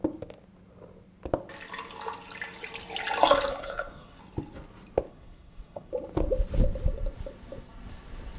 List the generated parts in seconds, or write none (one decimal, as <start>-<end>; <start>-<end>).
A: 3.5-4.2; 5.1-5.9

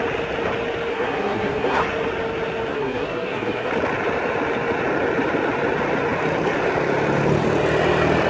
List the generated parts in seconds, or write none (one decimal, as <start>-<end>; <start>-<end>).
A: 0.9-1.8; 2.7-3.7

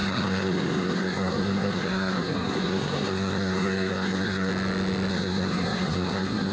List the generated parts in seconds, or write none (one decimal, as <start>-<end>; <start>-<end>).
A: 0.0-4.5; 5.1-6.5